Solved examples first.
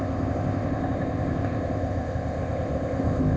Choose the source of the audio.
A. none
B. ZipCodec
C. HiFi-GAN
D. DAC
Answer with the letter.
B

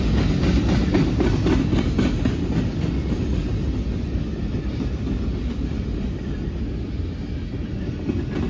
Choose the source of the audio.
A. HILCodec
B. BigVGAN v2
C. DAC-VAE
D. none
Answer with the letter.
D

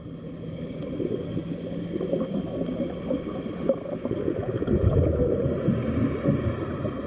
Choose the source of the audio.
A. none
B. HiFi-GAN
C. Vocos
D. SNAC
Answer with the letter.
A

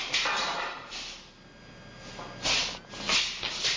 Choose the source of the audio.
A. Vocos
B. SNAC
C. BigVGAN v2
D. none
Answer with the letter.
D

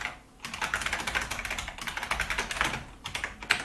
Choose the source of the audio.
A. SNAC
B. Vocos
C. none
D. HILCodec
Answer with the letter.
C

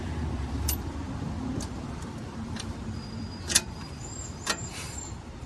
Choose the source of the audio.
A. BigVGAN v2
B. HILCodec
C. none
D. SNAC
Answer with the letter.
A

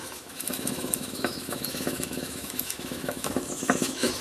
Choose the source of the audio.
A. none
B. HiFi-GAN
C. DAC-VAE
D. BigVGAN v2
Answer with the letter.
C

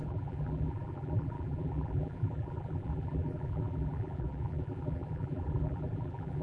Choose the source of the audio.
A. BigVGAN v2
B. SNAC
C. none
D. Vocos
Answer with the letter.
A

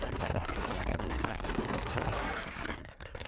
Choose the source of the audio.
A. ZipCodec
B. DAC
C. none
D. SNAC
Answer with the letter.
D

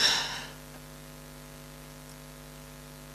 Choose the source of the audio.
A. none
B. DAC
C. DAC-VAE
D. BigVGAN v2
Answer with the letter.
A